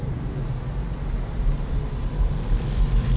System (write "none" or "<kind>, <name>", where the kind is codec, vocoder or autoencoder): none